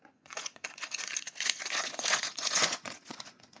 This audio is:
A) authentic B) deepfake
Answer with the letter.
B